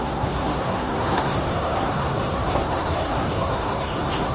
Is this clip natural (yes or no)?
no